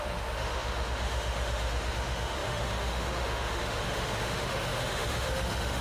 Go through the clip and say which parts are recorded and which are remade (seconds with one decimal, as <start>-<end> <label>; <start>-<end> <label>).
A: 0.0-5.8 remade